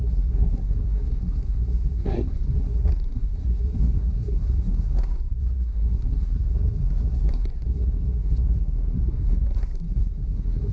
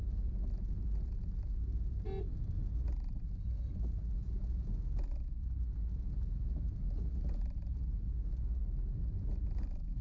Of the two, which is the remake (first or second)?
first